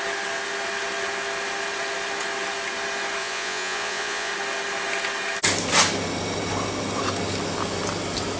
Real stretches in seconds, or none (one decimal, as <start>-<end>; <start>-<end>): 0.0-3.2; 4.3-8.4